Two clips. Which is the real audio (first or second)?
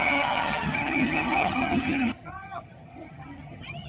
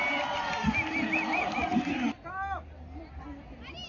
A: second